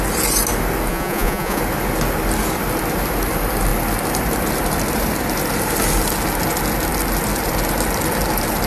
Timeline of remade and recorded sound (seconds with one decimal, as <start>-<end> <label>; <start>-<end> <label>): 0.0-0.9 recorded; 0.9-1.6 remade; 1.6-8.7 recorded